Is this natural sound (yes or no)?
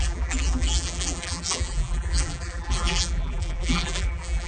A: no